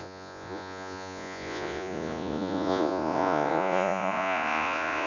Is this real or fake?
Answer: fake